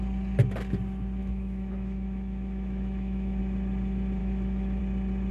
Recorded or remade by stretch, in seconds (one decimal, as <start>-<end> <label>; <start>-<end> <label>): 0.0-1.2 recorded; 1.2-3.4 remade; 3.4-4.2 recorded; 4.2-4.8 remade; 4.8-5.3 recorded